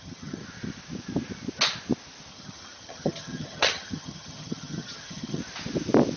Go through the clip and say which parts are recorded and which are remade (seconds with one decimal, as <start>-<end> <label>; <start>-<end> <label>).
0.0-0.4 remade; 0.4-2.3 recorded; 2.3-5.4 remade; 5.4-6.2 recorded